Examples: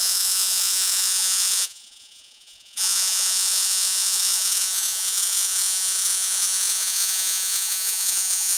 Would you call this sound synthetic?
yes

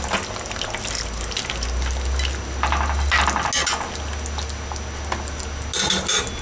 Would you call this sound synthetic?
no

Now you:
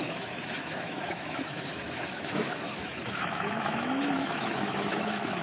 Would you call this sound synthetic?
yes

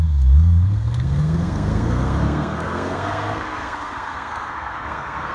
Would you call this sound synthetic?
yes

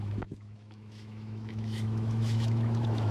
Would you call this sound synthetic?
yes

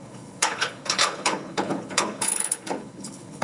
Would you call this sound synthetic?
yes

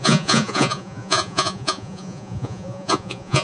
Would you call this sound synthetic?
yes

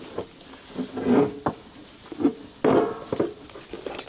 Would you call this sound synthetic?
no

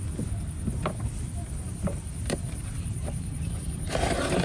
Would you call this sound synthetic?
yes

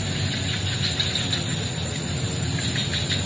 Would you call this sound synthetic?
no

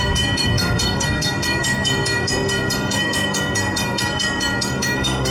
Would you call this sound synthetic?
yes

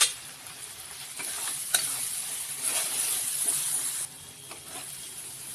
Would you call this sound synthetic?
no